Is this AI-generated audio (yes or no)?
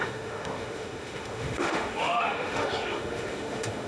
yes